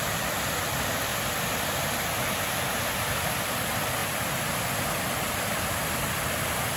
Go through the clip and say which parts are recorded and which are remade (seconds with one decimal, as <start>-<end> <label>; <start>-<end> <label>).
0.0-1.1 remade; 1.1-2.3 recorded; 2.3-6.8 remade